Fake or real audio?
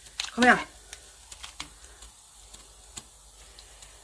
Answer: real